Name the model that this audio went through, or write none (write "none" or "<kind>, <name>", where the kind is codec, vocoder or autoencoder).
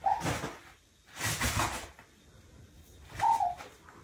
none